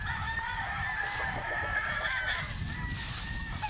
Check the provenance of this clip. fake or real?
real